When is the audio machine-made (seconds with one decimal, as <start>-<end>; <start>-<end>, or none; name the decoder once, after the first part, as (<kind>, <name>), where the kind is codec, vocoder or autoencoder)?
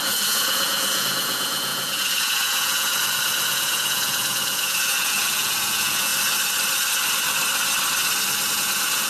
0.0-6.1 (vocoder, Vocos); 8.5-9.1